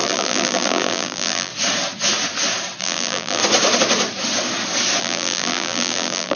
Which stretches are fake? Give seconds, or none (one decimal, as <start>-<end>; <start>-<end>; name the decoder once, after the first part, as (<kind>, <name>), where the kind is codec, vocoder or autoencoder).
0.0-1.5 (vocoder, BigVGAN v2); 2.8-3.4; 5.0-6.4